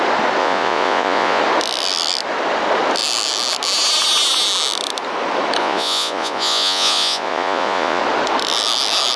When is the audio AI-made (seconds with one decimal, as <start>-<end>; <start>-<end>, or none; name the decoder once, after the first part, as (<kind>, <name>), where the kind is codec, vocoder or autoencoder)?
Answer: 0.4-1.4 (vocoder, Vocos); 5.6-8.0